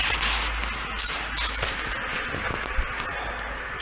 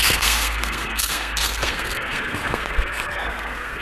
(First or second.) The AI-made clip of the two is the second